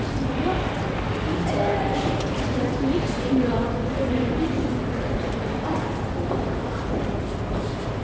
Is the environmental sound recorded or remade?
recorded